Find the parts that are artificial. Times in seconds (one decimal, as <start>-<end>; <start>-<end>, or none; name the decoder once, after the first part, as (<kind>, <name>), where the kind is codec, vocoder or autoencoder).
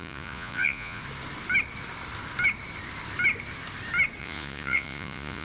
0.0-1.0 (vocoder, Vocos); 4.2-5.4